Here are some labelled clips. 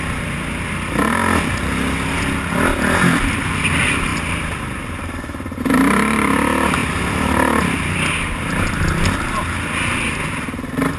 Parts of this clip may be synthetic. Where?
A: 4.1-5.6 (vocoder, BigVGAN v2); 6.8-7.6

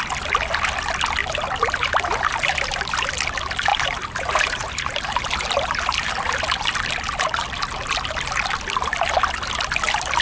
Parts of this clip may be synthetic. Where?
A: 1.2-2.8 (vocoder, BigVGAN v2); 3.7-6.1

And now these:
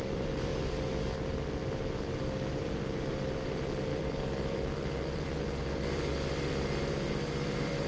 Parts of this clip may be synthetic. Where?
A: 0.0-0.5 (vocoder, BigVGAN v2); 2.5-7.9

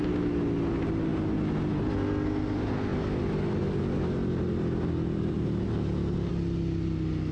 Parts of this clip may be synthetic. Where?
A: 2.9-6.3 (vocoder, BigVGAN v2)

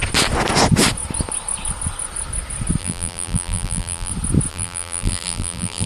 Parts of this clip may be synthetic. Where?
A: 2.8-4.1 (vocoder, BigVGAN v2); 4.5-5.9

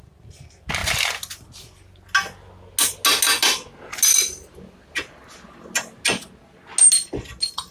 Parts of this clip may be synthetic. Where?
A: none